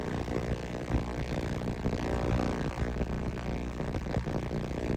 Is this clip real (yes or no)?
yes